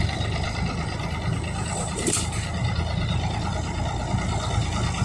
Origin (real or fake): real